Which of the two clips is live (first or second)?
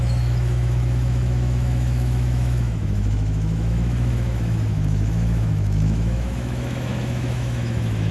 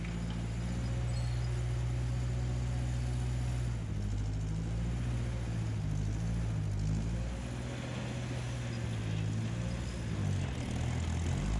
second